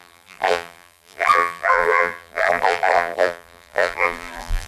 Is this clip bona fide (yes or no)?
no